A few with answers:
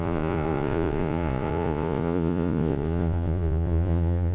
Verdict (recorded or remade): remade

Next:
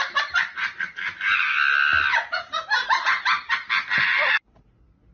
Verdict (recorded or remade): recorded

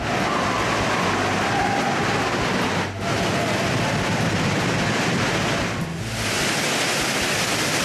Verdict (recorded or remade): recorded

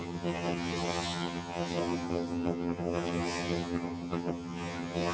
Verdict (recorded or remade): remade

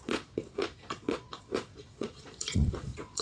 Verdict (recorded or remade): remade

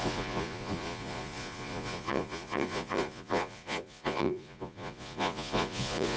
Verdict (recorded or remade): remade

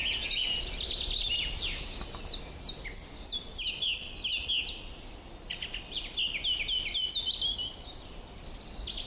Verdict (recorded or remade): recorded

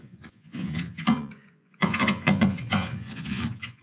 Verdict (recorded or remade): remade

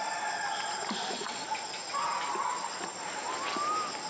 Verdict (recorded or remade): recorded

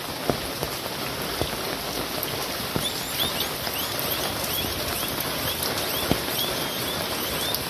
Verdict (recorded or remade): recorded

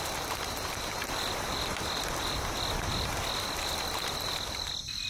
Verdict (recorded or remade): remade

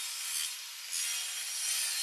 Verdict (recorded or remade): recorded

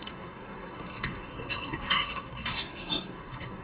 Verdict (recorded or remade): remade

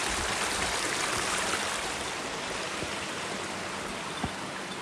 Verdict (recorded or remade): recorded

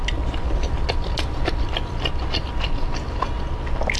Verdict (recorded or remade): recorded